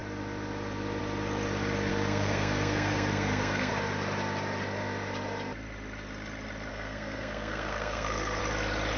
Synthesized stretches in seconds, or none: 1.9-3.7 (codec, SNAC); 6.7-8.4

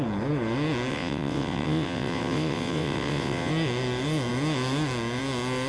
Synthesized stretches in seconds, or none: 0.9-3.5 (vocoder, WaveNeXt)

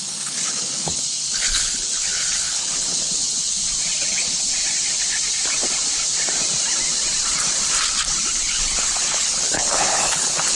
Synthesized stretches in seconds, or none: 0.0-3.6 (codec, HILCodec); 4.1-4.5; 8.3-10.6

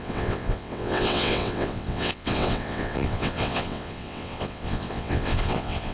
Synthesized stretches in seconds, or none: 0.0-5.9 (vocoder, WaveNeXt)

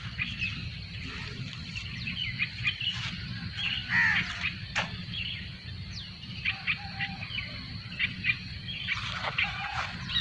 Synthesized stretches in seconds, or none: none

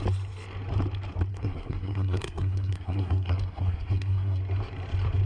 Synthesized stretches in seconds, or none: 1.3-4.4 (codec, SNAC)

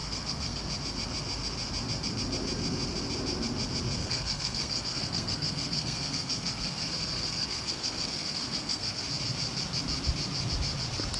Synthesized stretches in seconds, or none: 0.0-0.6 (codec, SNAC); 4.0-9.0

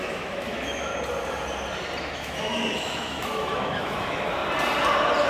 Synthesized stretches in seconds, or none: 0.0-0.9 (autoencoder, DAC-VAE); 2.0-4.4